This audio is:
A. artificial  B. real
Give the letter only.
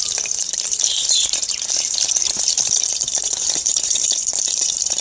A